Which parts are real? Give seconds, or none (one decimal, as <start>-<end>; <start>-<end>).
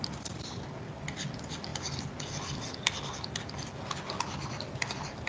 0.7-5.3